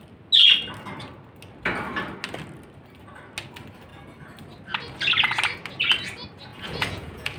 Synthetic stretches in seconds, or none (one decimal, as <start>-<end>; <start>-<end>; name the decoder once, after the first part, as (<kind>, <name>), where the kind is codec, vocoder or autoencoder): 6.5-7.4 (vocoder, Vocos)